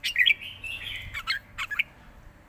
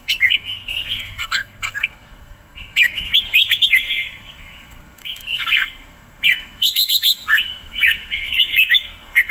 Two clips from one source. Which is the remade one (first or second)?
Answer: second